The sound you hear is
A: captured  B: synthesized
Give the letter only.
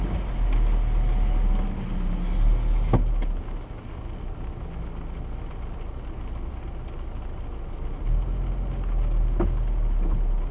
A